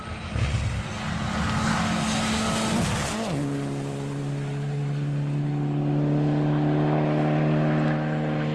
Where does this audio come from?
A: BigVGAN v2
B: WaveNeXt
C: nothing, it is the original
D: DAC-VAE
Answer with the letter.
C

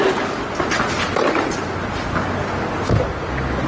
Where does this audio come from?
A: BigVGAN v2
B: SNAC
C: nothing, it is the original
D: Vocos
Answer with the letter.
C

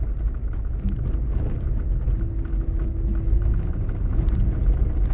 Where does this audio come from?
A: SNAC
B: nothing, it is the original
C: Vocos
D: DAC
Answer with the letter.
B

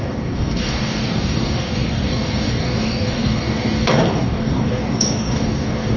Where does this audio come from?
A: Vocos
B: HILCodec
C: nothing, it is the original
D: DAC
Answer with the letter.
D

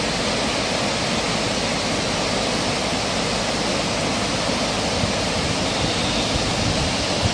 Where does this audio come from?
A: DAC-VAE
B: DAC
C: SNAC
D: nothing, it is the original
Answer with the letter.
D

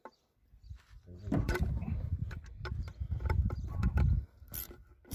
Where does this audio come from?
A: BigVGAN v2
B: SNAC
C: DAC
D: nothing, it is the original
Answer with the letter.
A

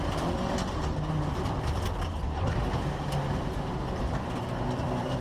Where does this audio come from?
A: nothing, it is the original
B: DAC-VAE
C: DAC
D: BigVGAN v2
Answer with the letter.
A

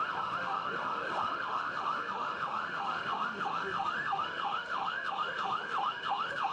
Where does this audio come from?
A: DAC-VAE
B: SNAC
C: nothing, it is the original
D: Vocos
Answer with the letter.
A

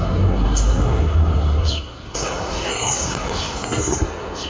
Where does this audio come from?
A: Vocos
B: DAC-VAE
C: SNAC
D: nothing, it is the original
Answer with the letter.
C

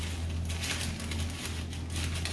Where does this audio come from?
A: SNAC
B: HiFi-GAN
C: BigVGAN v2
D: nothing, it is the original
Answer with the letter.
D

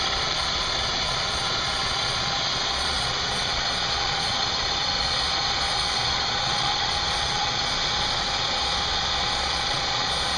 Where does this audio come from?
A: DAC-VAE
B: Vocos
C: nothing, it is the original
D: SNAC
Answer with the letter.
B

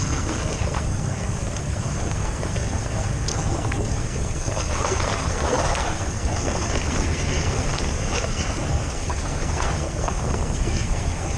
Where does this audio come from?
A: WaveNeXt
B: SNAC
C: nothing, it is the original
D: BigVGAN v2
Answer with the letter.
B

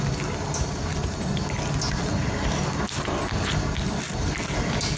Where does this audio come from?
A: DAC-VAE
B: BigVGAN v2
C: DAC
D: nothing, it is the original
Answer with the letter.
D